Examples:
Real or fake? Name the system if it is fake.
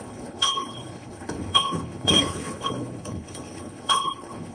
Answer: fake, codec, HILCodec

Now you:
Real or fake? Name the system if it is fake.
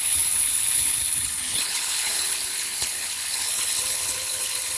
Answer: fake, codec, HILCodec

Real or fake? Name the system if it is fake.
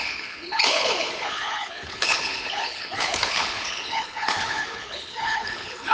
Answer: fake, codec, HILCodec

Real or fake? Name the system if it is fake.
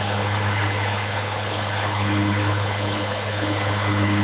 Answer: fake, codec, HILCodec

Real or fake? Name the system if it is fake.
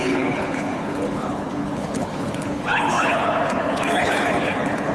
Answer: fake, codec, HILCodec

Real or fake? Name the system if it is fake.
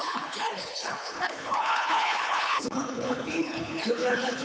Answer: fake, codec, HILCodec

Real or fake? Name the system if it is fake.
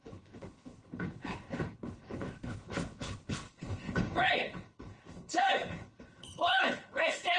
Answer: fake, codec, HILCodec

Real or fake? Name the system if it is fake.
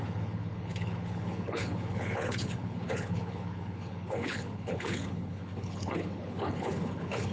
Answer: fake, codec, HILCodec